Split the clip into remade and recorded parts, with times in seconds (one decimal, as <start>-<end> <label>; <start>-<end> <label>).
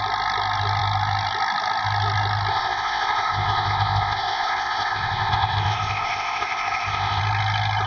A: 0.0-2.5 recorded; 2.5-7.2 remade; 7.2-7.9 recorded